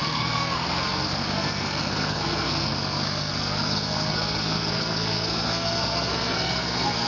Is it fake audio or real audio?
fake